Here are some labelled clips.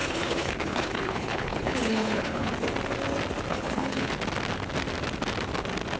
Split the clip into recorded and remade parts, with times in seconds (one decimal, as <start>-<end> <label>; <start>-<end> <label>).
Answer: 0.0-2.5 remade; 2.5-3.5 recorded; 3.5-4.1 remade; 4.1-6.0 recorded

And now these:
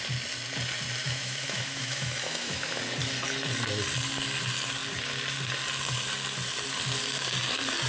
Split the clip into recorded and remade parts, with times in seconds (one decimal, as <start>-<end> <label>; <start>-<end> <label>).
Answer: 0.0-1.0 recorded; 1.0-2.8 remade; 2.8-7.9 recorded

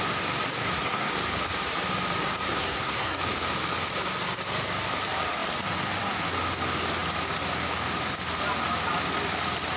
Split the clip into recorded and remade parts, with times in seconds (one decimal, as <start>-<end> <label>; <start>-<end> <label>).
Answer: 0.0-0.6 recorded; 0.6-1.1 remade; 1.1-2.5 recorded; 2.5-3.2 remade; 3.2-9.8 recorded